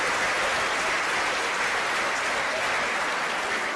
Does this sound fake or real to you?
real